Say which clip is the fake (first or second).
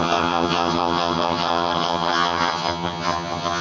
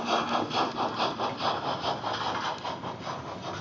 first